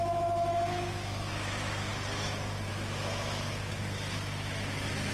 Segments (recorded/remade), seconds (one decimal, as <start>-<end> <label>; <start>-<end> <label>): 0.0-1.9 remade; 1.9-2.7 recorded; 2.7-5.1 remade